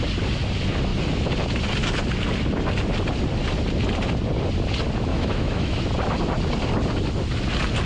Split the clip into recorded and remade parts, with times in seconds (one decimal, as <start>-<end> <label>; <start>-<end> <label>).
0.0-5.1 recorded; 5.1-5.9 remade; 5.9-7.9 recorded